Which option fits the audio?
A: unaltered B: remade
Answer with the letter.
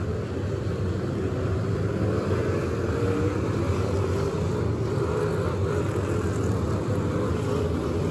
A